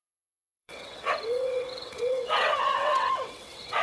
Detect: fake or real fake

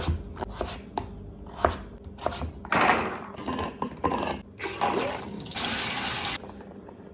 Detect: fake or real real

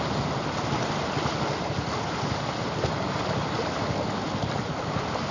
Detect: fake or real real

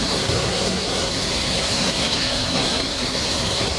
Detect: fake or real fake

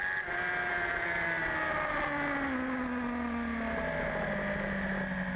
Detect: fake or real real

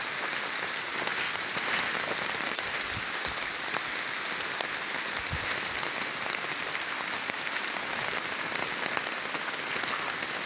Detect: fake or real real